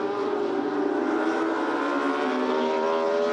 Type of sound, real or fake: real